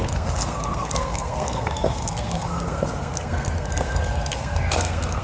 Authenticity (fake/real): fake